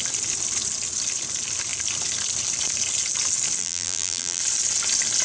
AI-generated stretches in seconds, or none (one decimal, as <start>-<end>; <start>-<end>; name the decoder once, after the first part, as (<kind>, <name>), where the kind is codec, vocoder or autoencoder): 3.6-4.4 (vocoder, BigVGAN v2)